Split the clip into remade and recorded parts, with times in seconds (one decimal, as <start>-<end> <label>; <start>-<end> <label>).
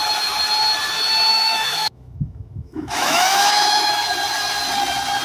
0.0-1.3 recorded; 1.3-3.9 remade; 3.9-5.2 recorded